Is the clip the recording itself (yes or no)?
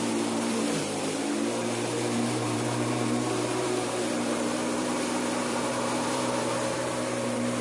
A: no